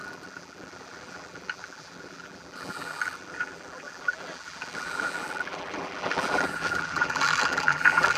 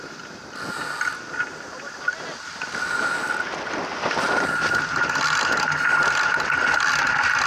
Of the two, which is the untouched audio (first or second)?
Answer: second